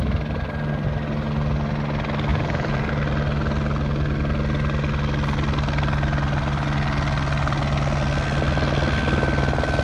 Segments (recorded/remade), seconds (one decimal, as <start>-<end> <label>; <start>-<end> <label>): 0.0-2.3 recorded; 2.3-2.9 remade; 2.9-9.8 recorded